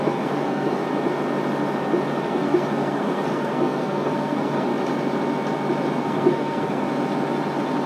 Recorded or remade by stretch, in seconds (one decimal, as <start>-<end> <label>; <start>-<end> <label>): 0.0-0.8 remade; 0.8-2.3 recorded; 2.3-4.7 remade; 4.7-6.0 recorded; 6.0-6.9 remade; 6.9-7.9 recorded